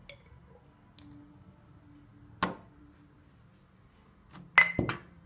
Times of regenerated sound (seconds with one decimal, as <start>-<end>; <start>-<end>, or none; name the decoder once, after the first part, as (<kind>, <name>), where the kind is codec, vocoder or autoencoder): none